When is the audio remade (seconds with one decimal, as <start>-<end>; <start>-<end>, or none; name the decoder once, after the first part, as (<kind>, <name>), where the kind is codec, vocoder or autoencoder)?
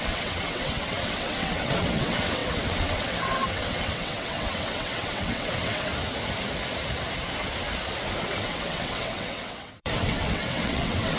0.0-5.9 (vocoder, WaveNeXt); 8.2-11.2